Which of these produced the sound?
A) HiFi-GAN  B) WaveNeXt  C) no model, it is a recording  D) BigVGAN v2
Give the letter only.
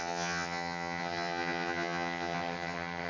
A